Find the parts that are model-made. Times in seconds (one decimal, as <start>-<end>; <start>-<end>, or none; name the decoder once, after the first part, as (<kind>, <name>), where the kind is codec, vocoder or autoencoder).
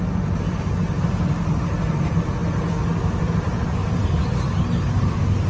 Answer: none